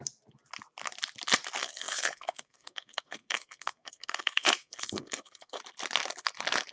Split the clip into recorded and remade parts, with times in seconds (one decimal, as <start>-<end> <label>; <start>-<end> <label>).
0.0-1.6 recorded; 1.6-5.6 remade; 5.6-6.7 recorded